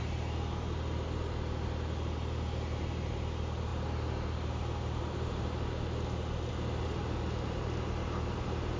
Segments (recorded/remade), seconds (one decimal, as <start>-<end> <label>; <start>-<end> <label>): 0.0-8.8 recorded